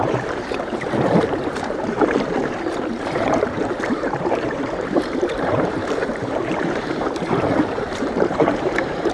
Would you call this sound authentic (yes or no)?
no